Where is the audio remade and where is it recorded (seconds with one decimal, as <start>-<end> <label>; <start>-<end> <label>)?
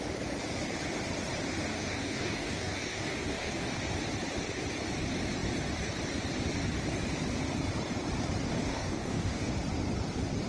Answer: 0.0-1.7 recorded; 1.7-3.8 remade; 3.8-8.5 recorded; 8.5-9.5 remade; 9.5-10.5 recorded